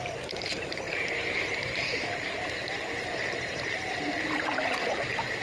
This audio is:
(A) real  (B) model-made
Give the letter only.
B